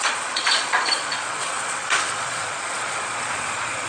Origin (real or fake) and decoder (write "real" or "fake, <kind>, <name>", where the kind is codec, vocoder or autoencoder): fake, vocoder, Vocos